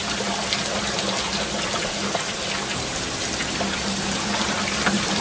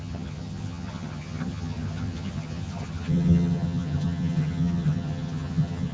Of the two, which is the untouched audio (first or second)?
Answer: first